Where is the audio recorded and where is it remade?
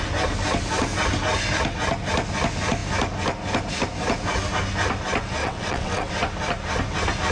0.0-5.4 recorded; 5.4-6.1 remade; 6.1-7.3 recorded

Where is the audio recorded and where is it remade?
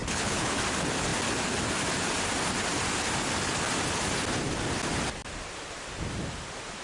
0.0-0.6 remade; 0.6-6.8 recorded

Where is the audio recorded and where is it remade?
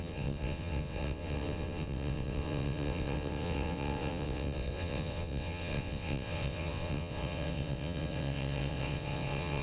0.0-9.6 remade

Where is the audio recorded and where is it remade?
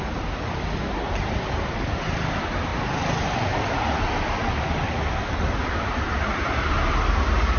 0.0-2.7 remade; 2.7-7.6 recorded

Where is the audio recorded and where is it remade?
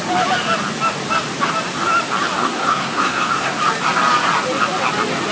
0.0-2.4 recorded; 2.4-3.6 remade; 3.6-5.3 recorded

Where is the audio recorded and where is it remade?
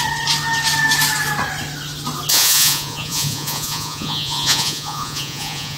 0.0-2.3 recorded; 2.3-5.8 remade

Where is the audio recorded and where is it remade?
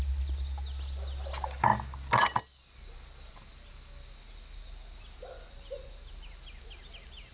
0.0-7.3 recorded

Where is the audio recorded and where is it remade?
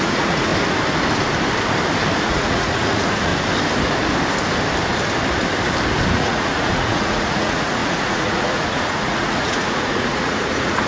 0.0-0.5 remade; 0.5-2.2 recorded; 2.2-3.3 remade; 3.3-6.1 recorded; 6.1-10.9 remade